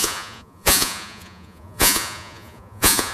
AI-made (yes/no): yes